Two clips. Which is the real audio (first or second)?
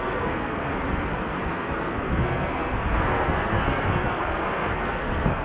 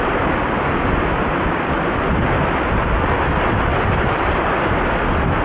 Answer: second